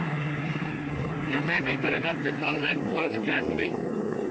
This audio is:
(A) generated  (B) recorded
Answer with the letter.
A